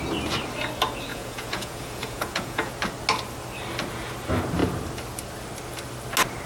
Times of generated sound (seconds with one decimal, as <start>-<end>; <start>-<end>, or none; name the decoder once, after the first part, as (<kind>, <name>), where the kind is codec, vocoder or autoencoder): 1.1-2.7 (vocoder, Vocos)